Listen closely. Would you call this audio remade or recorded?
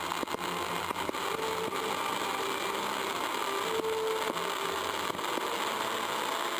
recorded